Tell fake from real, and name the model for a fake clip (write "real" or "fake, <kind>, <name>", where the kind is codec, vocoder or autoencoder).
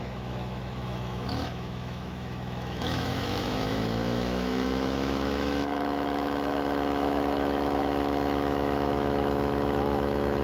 fake, autoencoder, DAC-VAE